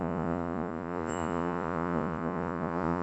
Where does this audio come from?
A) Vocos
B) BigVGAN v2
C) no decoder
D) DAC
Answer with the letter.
A